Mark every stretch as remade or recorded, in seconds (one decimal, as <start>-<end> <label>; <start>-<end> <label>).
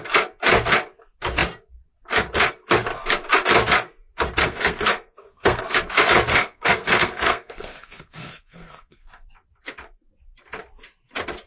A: 0.0-4.4 recorded; 4.4-5.6 remade; 5.6-6.3 recorded; 6.3-9.3 remade; 9.3-11.5 recorded